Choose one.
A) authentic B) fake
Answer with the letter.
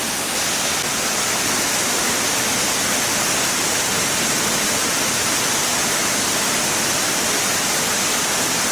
A